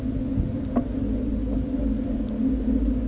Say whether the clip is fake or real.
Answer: real